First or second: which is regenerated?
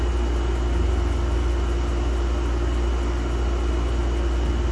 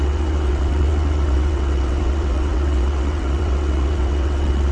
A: second